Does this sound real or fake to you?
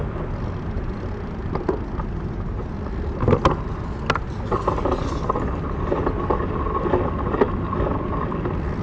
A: real